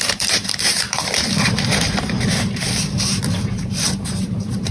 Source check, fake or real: fake